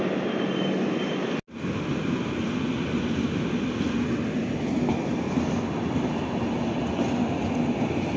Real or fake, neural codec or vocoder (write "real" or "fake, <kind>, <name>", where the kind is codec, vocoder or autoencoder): real